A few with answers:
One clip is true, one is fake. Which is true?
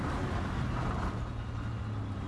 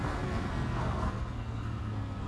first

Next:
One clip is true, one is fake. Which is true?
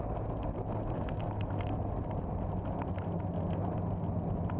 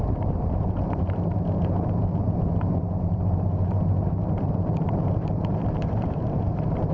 first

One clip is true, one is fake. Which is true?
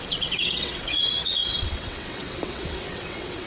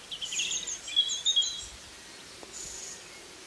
second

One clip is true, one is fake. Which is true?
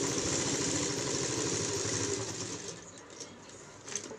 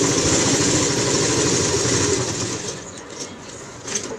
first